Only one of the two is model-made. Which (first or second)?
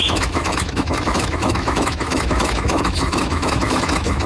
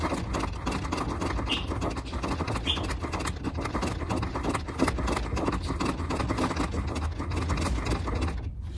first